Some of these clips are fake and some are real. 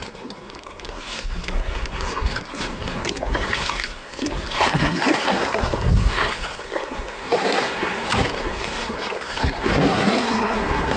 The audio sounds fake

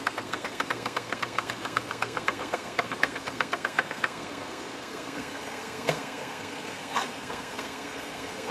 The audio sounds fake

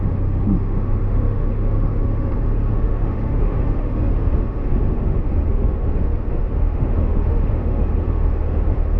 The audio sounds fake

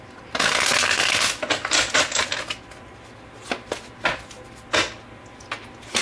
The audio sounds real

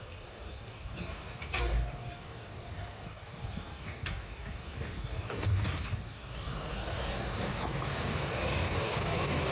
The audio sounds fake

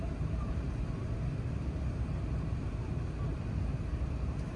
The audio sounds fake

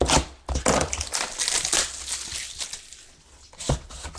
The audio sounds real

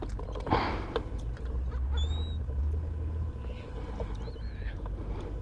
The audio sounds real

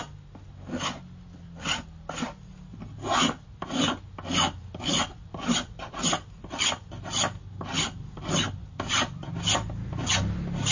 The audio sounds real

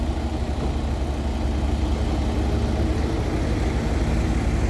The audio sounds real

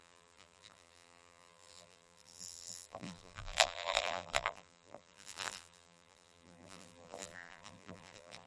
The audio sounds fake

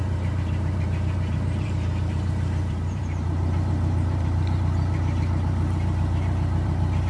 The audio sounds fake